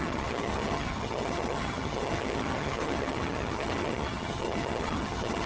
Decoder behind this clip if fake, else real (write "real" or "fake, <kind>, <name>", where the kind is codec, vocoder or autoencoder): fake, vocoder, HiFi-GAN